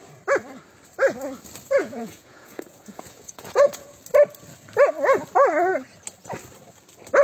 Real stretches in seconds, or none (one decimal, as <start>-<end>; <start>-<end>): 0.0-1.8; 4.0-7.2